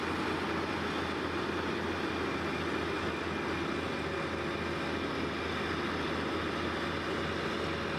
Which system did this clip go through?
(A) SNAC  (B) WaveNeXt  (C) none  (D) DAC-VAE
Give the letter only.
C